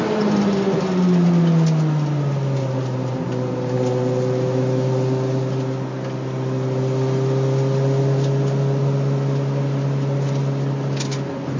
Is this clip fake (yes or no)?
no